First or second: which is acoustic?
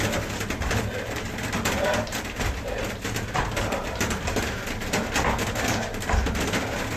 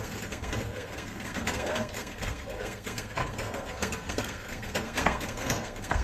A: first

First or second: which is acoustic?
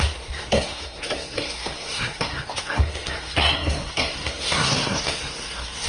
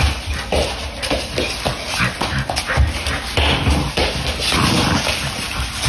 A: second